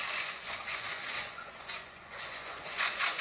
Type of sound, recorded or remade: remade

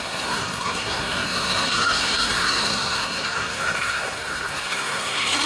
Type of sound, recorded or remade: remade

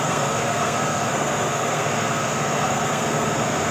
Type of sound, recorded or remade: remade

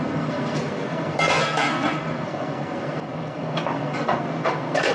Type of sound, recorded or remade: remade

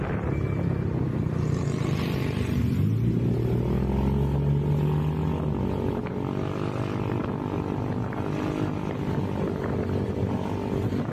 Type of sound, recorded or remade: recorded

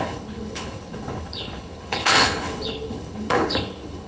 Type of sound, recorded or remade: remade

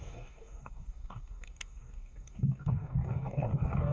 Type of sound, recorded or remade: remade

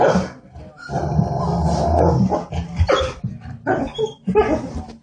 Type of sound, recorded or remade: recorded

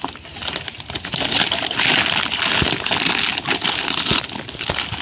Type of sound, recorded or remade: recorded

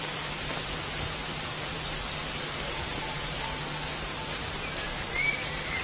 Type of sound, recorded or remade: remade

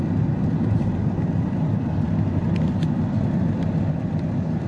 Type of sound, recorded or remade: recorded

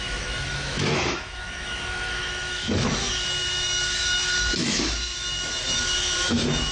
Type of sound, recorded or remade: remade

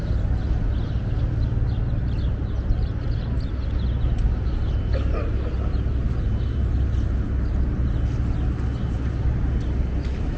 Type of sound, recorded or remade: recorded